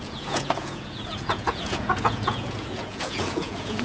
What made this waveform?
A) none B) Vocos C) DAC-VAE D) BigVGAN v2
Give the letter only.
B